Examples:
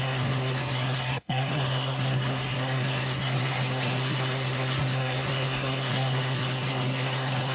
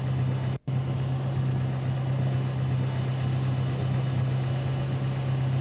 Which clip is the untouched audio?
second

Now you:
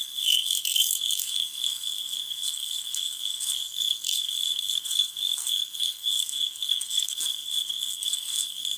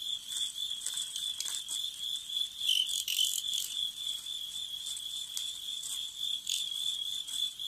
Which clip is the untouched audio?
second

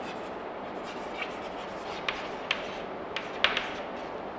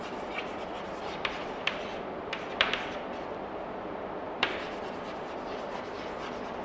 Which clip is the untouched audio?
first